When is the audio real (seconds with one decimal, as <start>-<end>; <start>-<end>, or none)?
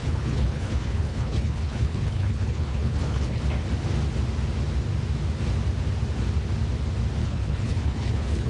3.4-7.2